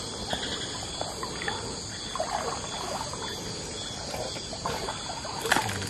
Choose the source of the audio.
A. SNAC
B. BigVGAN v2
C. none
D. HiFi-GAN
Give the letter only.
C